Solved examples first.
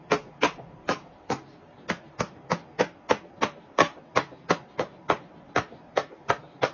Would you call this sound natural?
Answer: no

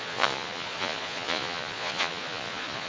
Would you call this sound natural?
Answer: no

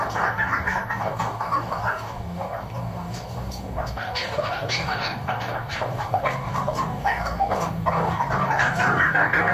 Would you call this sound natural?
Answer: no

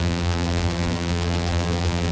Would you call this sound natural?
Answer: no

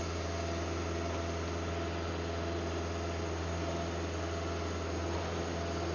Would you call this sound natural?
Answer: yes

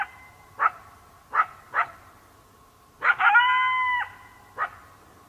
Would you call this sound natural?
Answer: yes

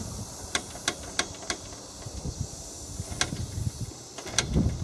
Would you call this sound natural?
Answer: yes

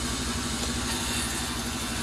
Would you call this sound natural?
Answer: no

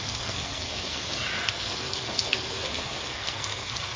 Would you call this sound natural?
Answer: no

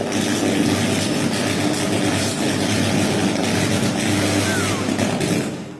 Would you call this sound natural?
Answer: yes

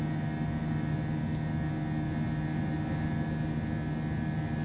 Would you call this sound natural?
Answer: yes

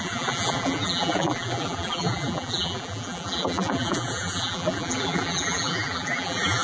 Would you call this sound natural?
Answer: no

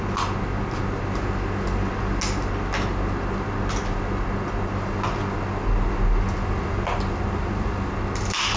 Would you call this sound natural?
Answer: yes